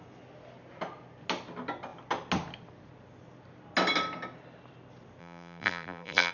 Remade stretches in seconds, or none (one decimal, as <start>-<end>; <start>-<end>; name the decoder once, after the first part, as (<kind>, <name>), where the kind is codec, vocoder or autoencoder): 5.2-6.3 (vocoder, BigVGAN v2)